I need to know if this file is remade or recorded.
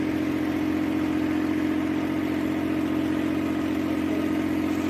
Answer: recorded